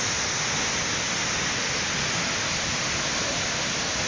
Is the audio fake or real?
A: real